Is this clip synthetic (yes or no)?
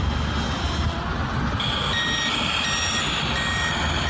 no